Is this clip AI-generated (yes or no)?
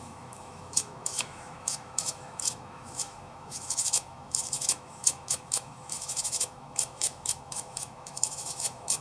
yes